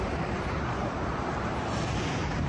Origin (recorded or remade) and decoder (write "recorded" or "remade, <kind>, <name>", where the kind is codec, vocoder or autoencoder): remade, vocoder, BigVGAN v2